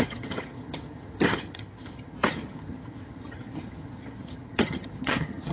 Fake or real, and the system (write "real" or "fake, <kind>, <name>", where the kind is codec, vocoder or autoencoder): fake, vocoder, HiFi-GAN